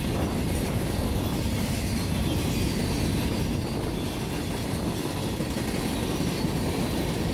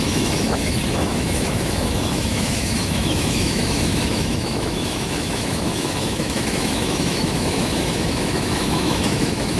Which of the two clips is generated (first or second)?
second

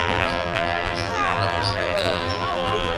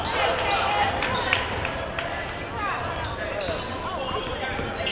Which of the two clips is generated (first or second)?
first